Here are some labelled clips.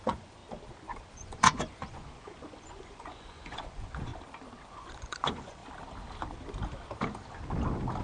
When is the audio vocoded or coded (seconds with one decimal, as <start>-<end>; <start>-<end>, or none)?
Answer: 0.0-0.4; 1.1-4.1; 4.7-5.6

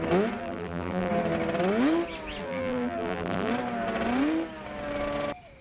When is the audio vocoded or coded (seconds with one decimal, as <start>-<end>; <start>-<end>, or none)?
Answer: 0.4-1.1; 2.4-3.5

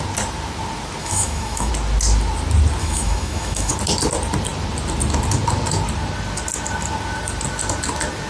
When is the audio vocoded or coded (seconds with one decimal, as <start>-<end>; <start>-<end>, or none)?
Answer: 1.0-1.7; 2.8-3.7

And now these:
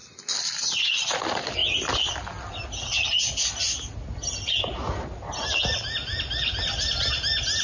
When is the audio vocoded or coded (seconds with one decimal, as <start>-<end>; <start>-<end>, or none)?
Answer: none